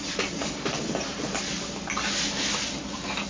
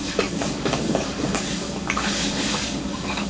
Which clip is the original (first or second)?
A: first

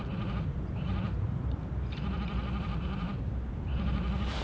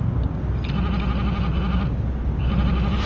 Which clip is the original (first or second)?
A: second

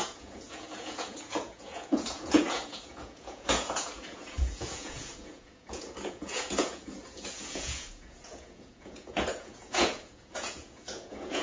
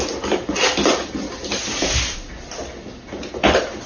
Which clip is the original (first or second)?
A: second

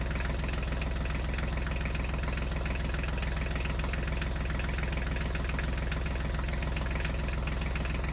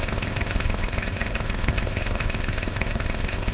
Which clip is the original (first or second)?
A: first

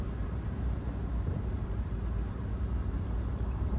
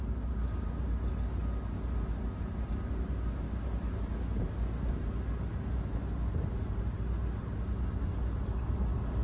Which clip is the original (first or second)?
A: second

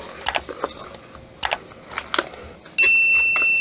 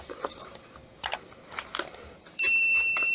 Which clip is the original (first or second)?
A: first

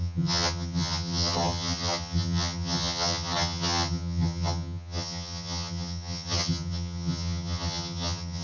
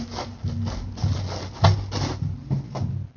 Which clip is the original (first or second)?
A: second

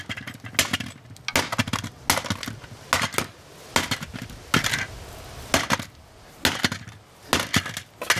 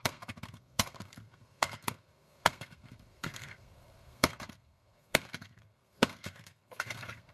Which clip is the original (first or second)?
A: first